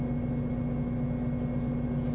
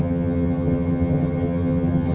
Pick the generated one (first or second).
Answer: second